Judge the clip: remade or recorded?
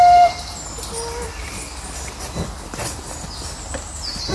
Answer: recorded